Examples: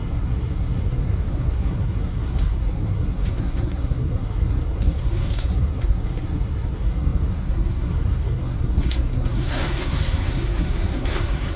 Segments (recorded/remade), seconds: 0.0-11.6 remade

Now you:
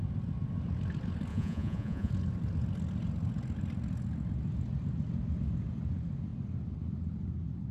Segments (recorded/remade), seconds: 0.0-1.3 recorded; 1.3-2.1 remade; 2.1-7.7 recorded

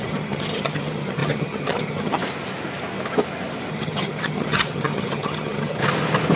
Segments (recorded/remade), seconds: 0.0-2.2 remade; 2.2-3.7 recorded; 3.7-5.8 remade; 5.8-6.4 recorded

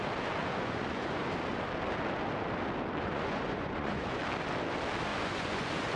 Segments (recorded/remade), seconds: 0.0-0.4 recorded; 0.4-1.3 remade; 1.3-3.0 recorded; 3.0-4.2 remade; 4.2-5.1 recorded; 5.1-6.0 remade

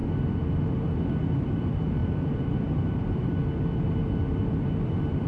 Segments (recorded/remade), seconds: 0.0-0.6 remade; 0.6-2.0 recorded; 2.0-3.3 remade; 3.3-4.0 recorded; 4.0-5.3 remade

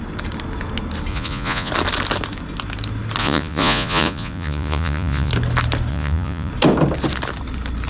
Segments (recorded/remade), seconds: 0.0-1.1 recorded; 1.1-1.7 remade; 1.7-3.2 recorded; 3.2-5.3 remade; 5.3-5.9 recorded; 5.9-6.5 remade; 6.5-7.9 recorded

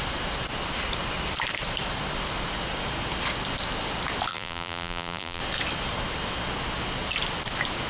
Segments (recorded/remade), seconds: 0.0-4.3 recorded; 4.3-5.4 remade; 5.4-7.9 recorded

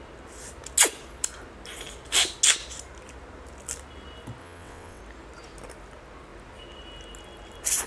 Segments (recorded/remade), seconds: 0.0-4.4 recorded; 4.4-5.0 remade; 5.0-7.9 recorded